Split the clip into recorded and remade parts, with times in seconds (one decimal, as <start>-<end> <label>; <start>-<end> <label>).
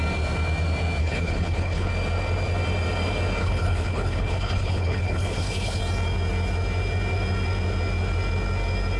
0.0-1.0 recorded; 1.0-1.9 remade; 1.9-3.4 recorded; 3.4-5.8 remade; 5.8-9.0 recorded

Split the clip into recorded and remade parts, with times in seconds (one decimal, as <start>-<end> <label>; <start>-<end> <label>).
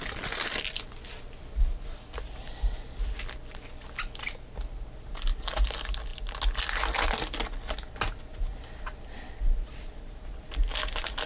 0.0-11.3 recorded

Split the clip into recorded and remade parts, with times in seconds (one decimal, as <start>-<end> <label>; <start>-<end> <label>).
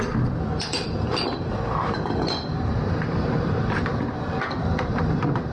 0.0-3.9 remade; 3.9-4.8 recorded; 4.8-5.5 remade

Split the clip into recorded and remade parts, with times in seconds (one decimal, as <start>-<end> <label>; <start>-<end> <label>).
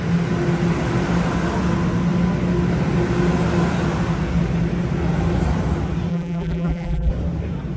0.0-6.1 recorded; 6.1-7.1 remade; 7.1-7.8 recorded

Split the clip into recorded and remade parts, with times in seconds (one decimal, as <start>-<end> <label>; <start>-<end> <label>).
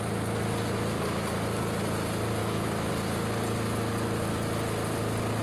0.0-2.4 recorded; 2.4-2.9 remade; 2.9-5.4 recorded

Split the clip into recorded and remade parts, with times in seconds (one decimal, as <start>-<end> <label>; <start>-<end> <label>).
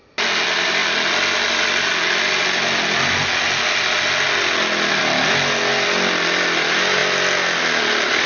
0.0-8.3 recorded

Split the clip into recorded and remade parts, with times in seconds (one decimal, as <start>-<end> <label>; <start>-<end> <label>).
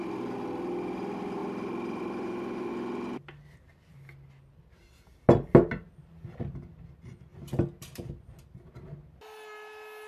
0.0-1.4 recorded; 1.4-2.7 remade; 2.7-7.3 recorded; 7.3-8.1 remade; 8.1-10.1 recorded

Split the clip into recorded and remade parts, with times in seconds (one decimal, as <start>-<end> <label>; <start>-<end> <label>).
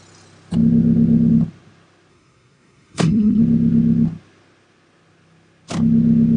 0.0-2.1 recorded; 2.1-3.4 remade; 3.4-6.4 recorded